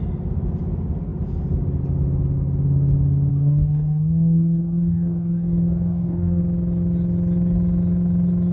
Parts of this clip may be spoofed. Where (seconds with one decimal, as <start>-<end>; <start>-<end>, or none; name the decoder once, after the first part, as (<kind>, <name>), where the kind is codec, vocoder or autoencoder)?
3.3-6.4 (codec, DAC)